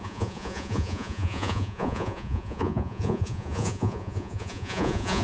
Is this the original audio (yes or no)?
no